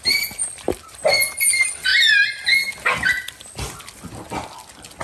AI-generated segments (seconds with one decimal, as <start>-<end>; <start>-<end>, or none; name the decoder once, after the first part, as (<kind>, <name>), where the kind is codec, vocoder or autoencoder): none